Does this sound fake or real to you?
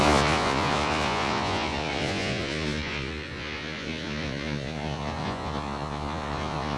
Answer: fake